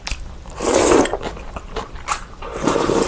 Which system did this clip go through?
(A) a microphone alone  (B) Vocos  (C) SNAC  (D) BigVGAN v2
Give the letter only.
A